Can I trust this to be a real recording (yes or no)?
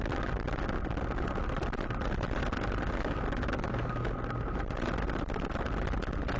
yes